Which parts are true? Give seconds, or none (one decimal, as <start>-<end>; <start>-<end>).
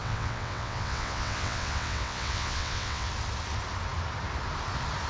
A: 3.1-5.1